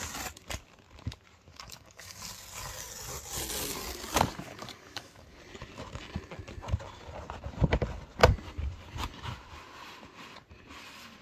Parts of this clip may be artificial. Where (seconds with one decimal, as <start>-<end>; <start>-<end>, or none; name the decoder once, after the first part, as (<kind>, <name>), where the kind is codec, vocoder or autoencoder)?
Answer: 1.5-2.2 (codec, DAC); 4.4-5.4